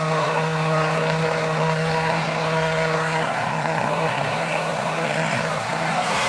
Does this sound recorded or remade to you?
remade